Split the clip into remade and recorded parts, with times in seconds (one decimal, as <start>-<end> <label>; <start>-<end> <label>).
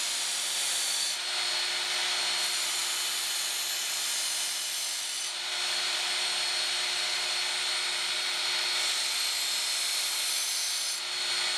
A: 0.0-11.6 recorded